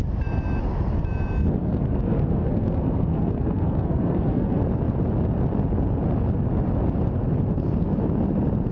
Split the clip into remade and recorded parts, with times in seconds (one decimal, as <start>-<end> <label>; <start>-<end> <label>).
0.0-1.6 recorded; 1.6-4.6 remade; 4.6-8.7 recorded

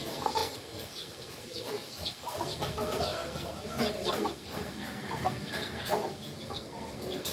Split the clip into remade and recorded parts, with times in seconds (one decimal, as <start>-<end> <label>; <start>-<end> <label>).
0.0-7.3 remade